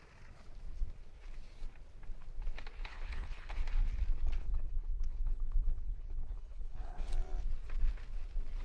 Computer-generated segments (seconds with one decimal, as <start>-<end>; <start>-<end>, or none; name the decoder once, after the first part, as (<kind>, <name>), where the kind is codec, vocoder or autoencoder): 2.9-3.6 (codec, HILCodec); 4.4-7.1